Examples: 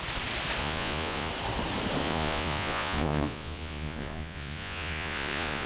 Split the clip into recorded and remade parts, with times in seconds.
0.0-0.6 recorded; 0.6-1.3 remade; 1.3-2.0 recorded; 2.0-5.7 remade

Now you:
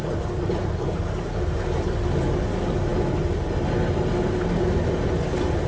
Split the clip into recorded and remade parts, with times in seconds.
0.0-5.7 recorded

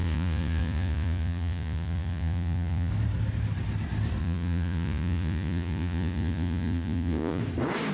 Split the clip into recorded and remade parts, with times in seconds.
0.0-2.9 remade; 2.9-4.2 recorded; 4.2-7.4 remade; 7.4-7.9 recorded

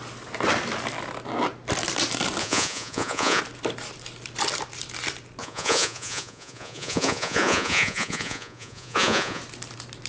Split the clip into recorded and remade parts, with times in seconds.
0.0-2.4 recorded; 2.4-3.4 remade; 3.4-5.4 recorded; 5.4-9.4 remade; 9.4-10.1 recorded

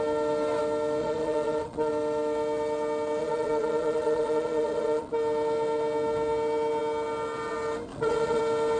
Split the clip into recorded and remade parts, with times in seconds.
0.0-1.0 recorded; 1.0-1.9 remade; 1.9-3.2 recorded; 3.2-5.1 remade; 5.1-7.9 recorded; 7.9-8.4 remade; 8.4-8.8 recorded